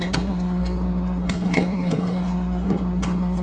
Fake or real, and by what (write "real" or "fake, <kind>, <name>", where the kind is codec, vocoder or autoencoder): fake, codec, SNAC